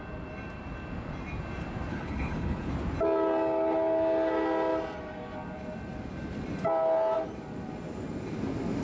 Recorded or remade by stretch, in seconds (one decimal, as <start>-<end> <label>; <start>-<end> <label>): 0.0-1.9 recorded; 1.9-2.7 remade; 2.7-8.8 recorded